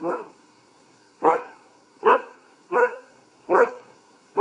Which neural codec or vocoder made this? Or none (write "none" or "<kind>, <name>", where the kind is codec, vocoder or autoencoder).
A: codec, SNAC